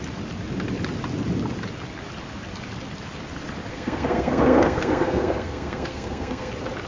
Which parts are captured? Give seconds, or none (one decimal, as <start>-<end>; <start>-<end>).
0.0-3.7; 6.5-6.9